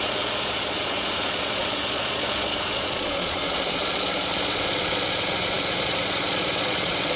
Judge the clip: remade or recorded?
remade